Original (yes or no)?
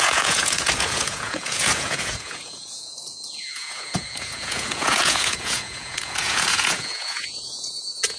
no